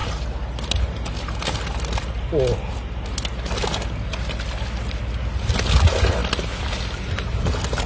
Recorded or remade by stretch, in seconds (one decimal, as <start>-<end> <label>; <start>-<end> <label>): 0.0-7.9 recorded